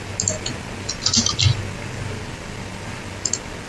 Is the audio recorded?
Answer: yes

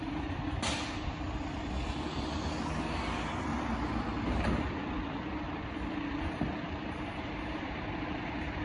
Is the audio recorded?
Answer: yes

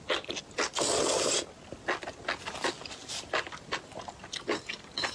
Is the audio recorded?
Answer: yes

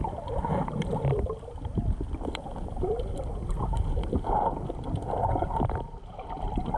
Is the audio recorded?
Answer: yes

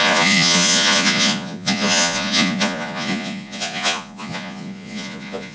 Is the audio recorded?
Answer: no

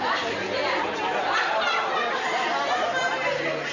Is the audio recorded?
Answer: yes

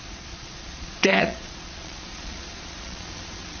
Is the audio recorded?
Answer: no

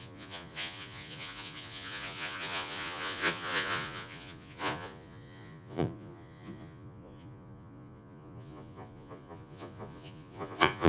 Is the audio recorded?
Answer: no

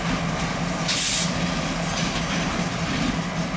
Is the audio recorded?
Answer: yes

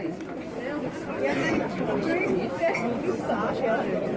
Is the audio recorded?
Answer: yes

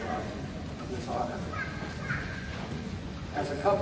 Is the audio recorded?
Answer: no